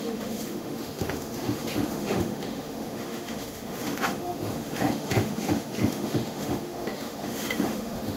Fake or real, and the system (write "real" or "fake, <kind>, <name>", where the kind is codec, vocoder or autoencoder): fake, autoencoder, DAC-VAE